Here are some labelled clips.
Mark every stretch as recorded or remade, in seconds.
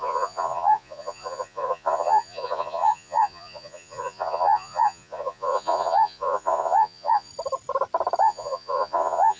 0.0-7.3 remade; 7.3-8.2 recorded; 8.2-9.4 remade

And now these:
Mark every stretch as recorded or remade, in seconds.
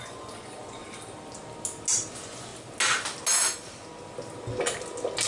0.0-0.8 remade; 0.8-2.1 recorded; 2.1-2.5 remade; 2.5-5.3 recorded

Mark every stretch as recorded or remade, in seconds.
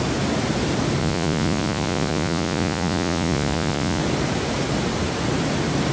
0.0-1.0 recorded; 1.0-4.0 remade; 4.0-5.9 recorded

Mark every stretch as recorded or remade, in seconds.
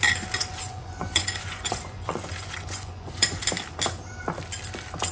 0.0-0.4 recorded; 0.4-3.4 remade; 3.4-5.1 recorded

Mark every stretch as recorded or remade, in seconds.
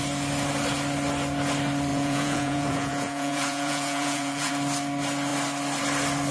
0.0-1.9 recorded; 1.9-4.5 remade; 4.5-6.3 recorded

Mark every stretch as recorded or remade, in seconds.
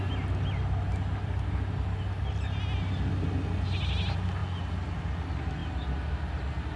0.0-6.8 recorded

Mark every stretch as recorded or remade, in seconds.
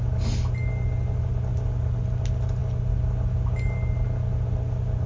0.0-5.1 recorded